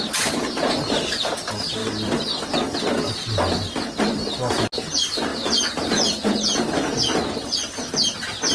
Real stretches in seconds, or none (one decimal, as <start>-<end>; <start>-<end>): 0.0-8.5